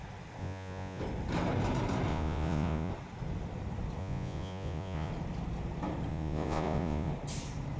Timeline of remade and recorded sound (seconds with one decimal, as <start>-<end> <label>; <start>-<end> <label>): 0.0-0.4 recorded; 0.4-1.0 remade; 1.0-2.1 recorded; 2.1-2.9 remade; 2.9-4.0 recorded; 4.0-5.1 remade; 5.1-6.1 recorded; 6.1-7.1 remade; 7.1-7.8 recorded